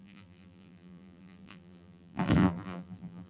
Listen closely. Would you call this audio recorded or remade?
remade